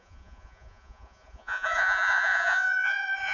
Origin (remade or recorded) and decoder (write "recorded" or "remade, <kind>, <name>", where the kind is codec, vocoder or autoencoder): remade, vocoder, Vocos